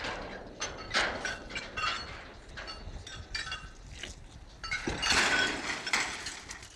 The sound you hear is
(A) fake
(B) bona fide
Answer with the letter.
B